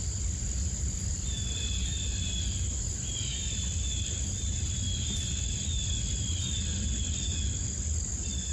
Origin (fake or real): real